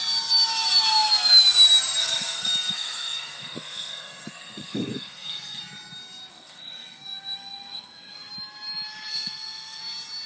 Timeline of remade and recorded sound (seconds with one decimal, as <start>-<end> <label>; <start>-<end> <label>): 0.0-2.0 recorded; 2.0-5.6 remade; 5.6-6.3 recorded; 6.3-8.3 remade; 8.3-9.1 recorded; 9.1-9.8 remade; 9.8-10.3 recorded